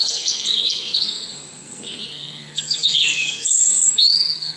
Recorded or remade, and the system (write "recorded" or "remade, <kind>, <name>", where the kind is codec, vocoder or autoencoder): remade, codec, SNAC